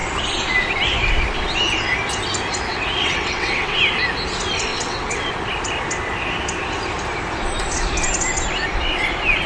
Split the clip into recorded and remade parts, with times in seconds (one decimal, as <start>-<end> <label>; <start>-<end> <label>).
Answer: 0.0-2.7 recorded; 2.7-3.8 remade; 3.8-4.7 recorded; 4.7-5.3 remade; 5.3-9.5 recorded